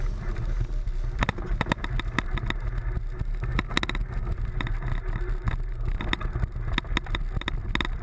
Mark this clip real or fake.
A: real